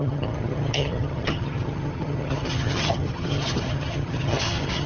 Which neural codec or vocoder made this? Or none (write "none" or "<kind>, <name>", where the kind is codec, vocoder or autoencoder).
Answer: vocoder, HiFi-GAN